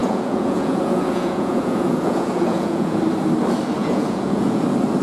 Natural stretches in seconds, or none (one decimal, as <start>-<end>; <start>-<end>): 3.0-3.8; 4.6-5.0